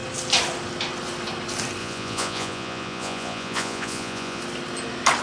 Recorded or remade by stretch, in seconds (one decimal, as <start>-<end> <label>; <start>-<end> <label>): 0.0-1.8 recorded; 1.8-4.4 remade; 4.4-5.2 recorded